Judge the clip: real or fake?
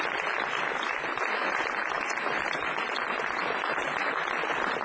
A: real